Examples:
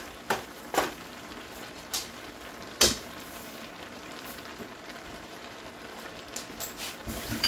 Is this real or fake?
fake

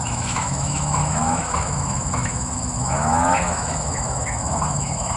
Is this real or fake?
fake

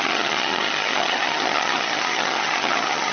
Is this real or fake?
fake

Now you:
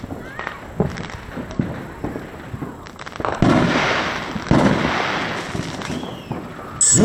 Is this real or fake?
real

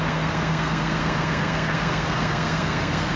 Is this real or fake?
fake